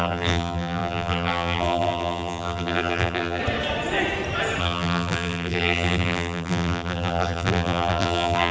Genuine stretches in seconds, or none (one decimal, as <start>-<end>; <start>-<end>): 3.4-4.6